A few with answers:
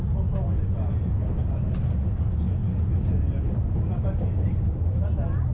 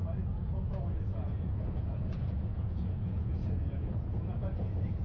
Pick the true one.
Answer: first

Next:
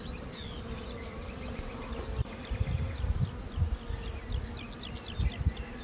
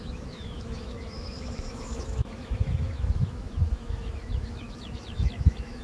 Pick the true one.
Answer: first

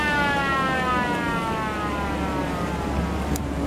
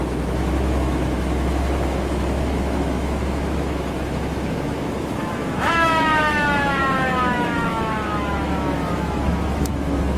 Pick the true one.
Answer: first